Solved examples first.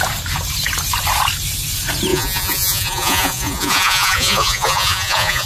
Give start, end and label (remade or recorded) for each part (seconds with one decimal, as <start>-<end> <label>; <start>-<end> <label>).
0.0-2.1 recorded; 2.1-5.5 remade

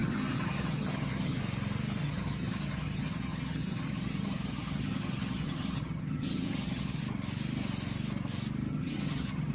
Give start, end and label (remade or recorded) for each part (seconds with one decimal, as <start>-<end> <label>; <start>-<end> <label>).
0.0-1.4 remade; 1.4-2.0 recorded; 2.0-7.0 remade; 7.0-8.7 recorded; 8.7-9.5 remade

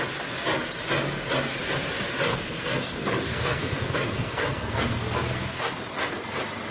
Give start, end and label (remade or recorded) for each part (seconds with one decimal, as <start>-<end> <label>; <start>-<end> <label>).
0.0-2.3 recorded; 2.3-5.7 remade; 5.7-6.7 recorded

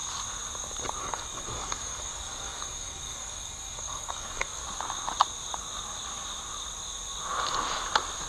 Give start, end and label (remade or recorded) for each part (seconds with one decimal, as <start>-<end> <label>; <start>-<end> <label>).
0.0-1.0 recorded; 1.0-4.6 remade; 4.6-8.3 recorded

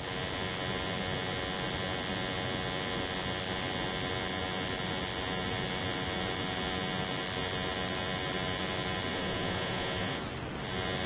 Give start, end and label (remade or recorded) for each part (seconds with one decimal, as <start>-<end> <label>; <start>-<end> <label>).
0.0-9.1 recorded; 9.1-10.2 remade; 10.2-11.1 recorded

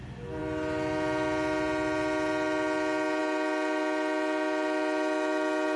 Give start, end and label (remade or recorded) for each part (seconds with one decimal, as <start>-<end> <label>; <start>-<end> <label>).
0.0-5.8 recorded

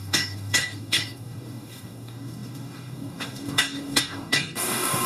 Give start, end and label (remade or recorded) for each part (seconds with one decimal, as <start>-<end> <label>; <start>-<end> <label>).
0.0-5.1 remade

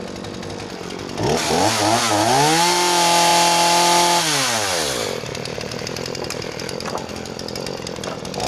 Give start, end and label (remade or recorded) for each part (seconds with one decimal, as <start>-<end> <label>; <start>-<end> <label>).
0.0-8.5 recorded